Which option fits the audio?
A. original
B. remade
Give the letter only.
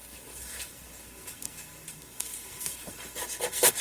B